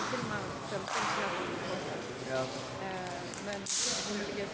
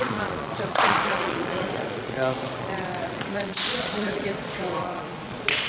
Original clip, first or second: first